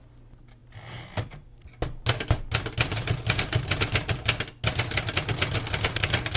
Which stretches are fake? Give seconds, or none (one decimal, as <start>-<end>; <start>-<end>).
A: none

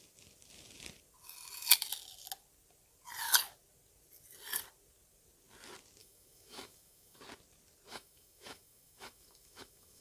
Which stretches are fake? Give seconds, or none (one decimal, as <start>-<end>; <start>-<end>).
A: 6.0-7.2; 7.9-10.0

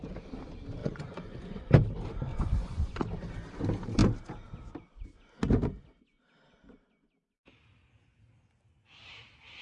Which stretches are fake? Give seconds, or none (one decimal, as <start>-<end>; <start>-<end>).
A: 0.8-1.6; 2.3-3.0

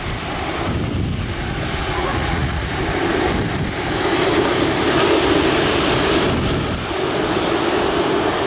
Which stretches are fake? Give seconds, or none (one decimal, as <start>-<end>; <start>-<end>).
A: 1.8-2.7

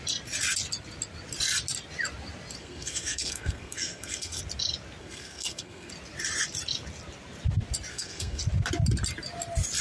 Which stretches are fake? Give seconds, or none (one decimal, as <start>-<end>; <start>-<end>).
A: 2.6-4.4; 5.0-5.9; 7.9-8.4

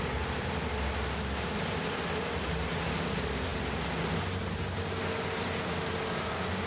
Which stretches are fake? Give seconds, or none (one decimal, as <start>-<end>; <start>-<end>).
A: none